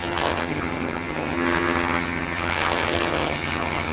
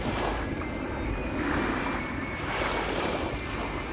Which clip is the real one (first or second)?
second